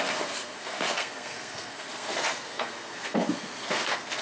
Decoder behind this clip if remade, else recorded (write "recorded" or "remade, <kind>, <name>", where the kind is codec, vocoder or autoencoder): remade, codec, SNAC